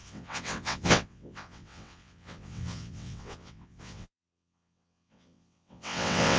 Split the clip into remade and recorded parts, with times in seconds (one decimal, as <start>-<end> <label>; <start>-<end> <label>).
0.0-6.4 remade